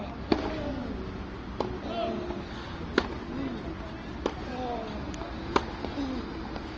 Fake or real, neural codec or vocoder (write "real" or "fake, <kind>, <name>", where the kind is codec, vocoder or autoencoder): real